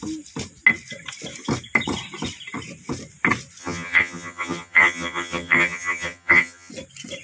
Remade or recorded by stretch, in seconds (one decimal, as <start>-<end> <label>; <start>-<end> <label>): 0.0-3.6 recorded; 3.6-6.7 remade; 6.7-7.2 recorded